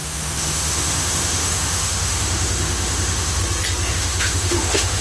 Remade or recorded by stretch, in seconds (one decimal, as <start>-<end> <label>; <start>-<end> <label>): 0.0-3.4 remade; 3.4-3.9 recorded; 3.9-5.0 remade